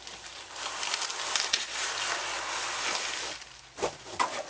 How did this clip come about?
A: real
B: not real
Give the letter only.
A